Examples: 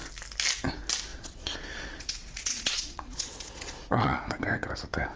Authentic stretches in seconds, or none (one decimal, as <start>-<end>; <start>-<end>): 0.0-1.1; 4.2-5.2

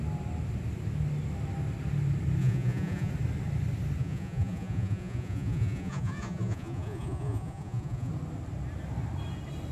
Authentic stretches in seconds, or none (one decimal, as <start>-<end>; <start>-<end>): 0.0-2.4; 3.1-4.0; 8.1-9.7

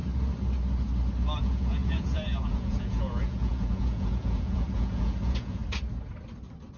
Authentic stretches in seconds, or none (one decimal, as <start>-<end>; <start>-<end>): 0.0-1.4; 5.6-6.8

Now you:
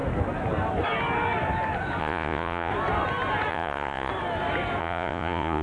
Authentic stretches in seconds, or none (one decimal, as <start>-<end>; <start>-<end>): 0.0-2.0; 2.7-3.5; 4.1-4.8

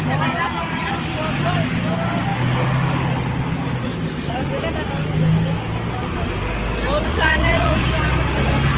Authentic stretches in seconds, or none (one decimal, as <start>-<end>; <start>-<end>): 0.0-7.1; 7.8-8.8

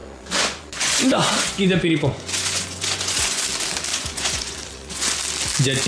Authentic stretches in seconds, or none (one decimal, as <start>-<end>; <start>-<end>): 3.4-3.9; 5.2-5.9

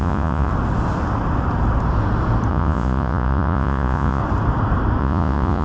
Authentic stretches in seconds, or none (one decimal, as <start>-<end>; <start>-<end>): 0.5-2.5; 4.2-5.0